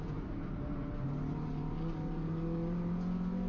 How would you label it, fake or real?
real